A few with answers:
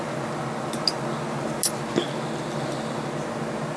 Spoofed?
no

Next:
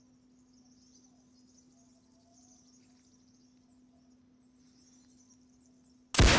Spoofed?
no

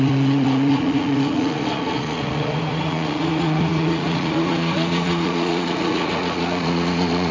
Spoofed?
yes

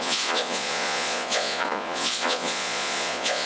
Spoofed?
yes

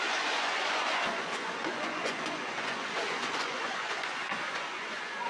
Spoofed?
yes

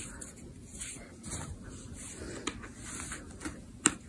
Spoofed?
no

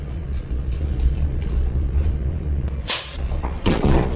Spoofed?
yes